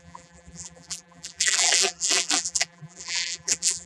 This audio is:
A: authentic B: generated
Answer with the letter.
B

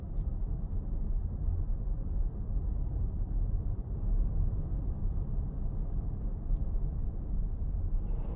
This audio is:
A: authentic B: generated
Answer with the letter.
B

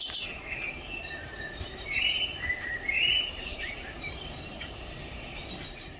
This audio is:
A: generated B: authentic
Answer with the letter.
A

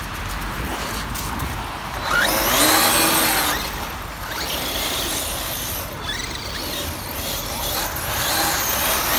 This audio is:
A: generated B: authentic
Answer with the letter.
B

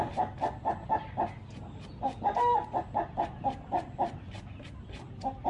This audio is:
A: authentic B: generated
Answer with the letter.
A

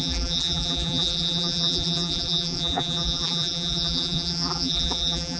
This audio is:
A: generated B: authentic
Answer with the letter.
A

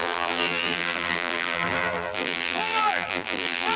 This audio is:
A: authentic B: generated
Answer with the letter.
B